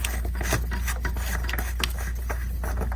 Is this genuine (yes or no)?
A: yes